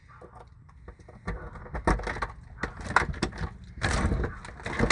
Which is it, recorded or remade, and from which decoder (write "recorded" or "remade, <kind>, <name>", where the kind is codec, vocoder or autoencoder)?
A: recorded